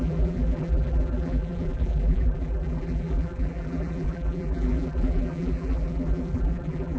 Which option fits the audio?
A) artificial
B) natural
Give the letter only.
A